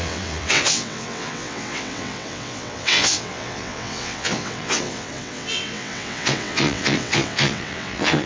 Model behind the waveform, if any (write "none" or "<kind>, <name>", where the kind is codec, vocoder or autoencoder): vocoder, WaveNeXt